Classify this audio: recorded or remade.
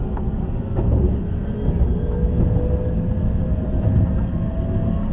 recorded